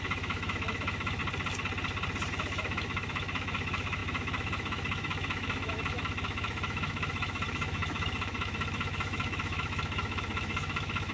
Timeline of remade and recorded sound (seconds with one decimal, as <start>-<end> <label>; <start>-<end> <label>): 0.0-1.2 remade; 1.2-2.3 recorded; 2.3-11.1 remade